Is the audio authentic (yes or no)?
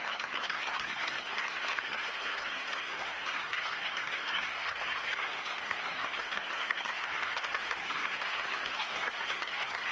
no